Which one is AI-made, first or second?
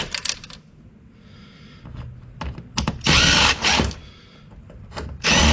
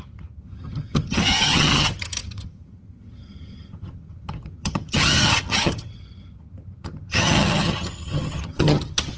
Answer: second